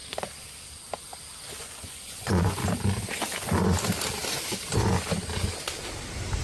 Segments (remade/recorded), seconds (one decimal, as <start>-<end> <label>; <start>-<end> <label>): 0.0-1.6 recorded; 1.6-2.6 remade; 2.6-6.4 recorded